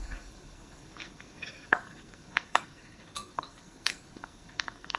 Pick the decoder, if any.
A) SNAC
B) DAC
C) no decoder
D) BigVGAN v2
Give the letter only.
A